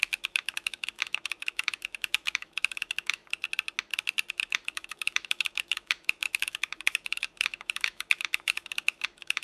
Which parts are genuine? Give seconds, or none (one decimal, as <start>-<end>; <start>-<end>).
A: 3.2-4.3